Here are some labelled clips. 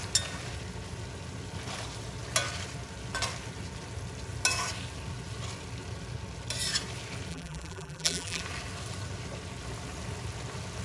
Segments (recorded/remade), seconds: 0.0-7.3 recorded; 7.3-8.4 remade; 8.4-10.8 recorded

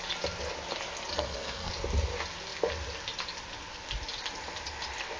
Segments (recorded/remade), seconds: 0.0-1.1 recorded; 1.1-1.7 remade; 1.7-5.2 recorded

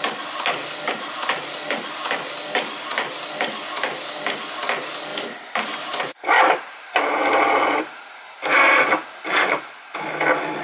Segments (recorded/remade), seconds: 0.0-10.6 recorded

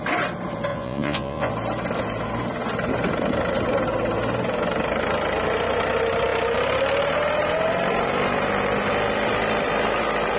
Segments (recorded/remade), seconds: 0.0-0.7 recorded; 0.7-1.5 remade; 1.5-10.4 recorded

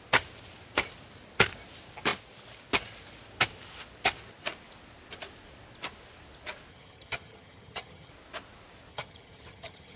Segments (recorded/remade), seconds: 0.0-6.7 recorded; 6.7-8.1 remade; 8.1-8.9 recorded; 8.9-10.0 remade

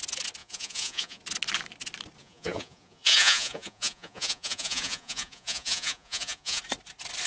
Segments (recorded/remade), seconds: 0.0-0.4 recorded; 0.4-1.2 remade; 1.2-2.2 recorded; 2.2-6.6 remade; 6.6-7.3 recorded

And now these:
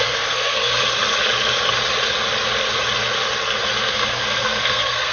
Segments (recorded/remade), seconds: 0.0-0.8 remade; 0.8-3.9 recorded; 3.9-5.1 remade